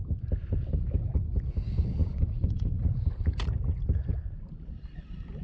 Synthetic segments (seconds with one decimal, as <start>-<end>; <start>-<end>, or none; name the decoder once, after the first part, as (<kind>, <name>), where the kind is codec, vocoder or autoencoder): 2.0-2.8 (vocoder, Vocos)